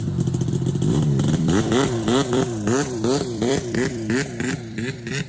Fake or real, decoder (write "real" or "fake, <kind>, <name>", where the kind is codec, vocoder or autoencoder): fake, vocoder, BigVGAN v2